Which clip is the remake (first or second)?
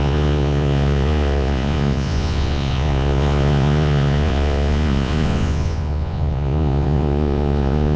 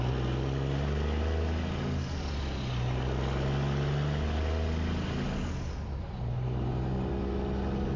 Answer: first